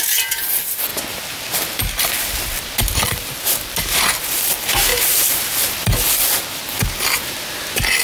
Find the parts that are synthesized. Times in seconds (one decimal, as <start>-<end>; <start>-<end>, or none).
4.9-5.8